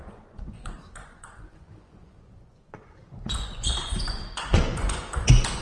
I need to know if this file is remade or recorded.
remade